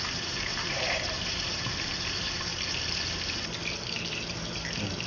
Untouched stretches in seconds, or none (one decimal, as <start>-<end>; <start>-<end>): 2.5-4.1